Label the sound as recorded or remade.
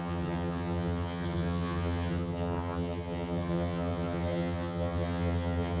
remade